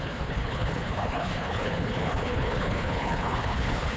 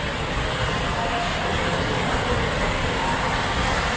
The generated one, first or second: first